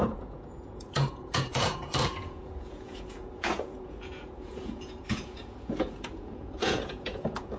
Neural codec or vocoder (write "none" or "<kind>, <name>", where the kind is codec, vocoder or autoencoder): vocoder, Vocos